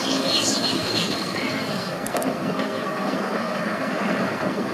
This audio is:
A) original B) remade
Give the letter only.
B